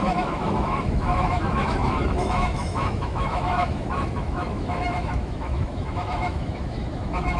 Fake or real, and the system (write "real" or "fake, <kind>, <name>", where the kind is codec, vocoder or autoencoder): fake, autoencoder, DAC-VAE